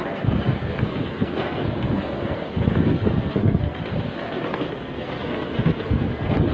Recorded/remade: remade